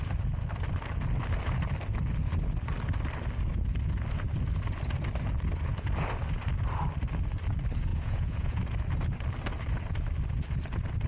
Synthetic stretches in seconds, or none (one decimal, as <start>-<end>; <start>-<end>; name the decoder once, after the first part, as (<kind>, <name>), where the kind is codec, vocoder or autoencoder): 7.9-8.6 (vocoder, Vocos)